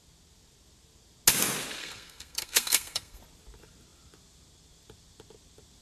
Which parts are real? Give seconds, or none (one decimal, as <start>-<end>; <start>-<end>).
0.0-1.8; 3.2-5.8